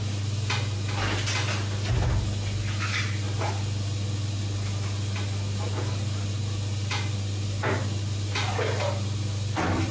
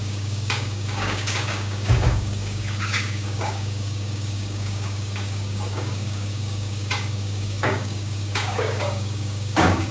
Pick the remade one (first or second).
second